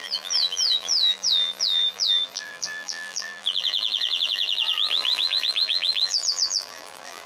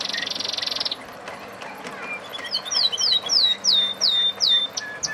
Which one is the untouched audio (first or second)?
second